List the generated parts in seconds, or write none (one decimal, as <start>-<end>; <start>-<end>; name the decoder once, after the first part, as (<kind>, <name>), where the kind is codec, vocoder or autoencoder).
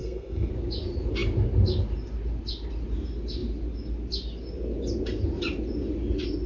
0.0-0.5 (codec, SNAC)